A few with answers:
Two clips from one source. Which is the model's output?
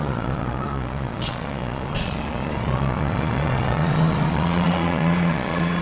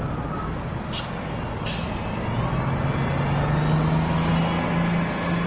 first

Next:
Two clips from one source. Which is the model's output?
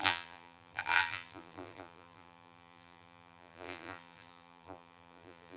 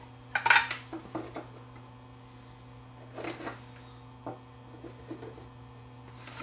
first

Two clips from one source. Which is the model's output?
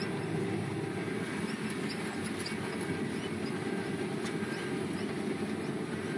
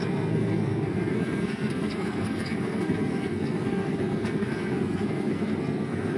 second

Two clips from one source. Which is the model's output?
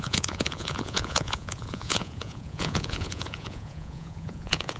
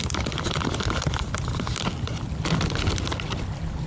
first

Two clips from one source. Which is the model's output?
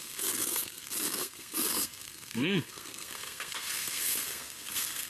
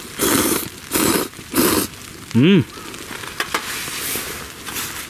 first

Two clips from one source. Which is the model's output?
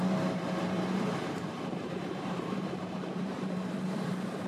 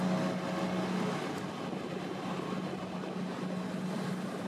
first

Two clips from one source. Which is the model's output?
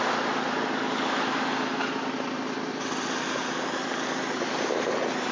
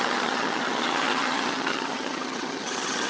second